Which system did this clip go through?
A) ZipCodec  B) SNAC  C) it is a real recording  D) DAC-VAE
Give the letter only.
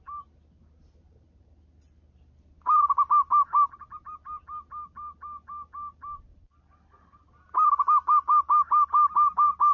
C